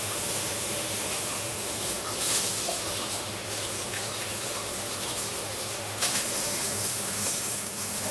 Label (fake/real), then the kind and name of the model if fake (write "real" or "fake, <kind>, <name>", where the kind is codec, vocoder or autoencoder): fake, autoencoder, DAC-VAE